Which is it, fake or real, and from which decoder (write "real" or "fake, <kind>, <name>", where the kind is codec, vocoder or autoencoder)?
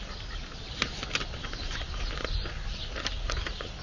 real